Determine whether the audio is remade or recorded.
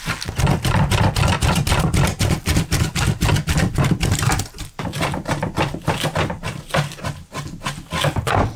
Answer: recorded